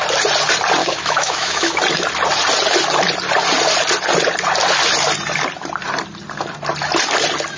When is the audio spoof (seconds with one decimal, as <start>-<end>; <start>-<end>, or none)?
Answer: 0.8-1.8